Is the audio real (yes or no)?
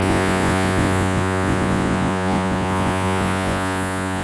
no